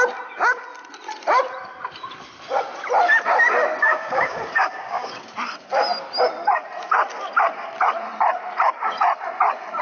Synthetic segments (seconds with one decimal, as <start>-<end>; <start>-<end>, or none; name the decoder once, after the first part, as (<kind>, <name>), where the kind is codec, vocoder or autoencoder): 3.9-5.2 (codec, DAC)